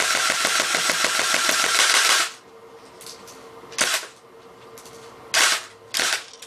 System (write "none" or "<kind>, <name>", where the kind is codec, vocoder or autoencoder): none